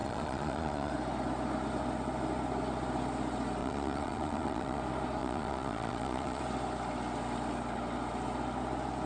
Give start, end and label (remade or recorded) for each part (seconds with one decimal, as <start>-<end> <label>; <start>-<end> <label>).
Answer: 0.0-0.9 remade; 0.9-3.6 recorded; 3.6-4.8 remade; 4.8-5.2 recorded; 5.2-6.4 remade; 6.4-9.1 recorded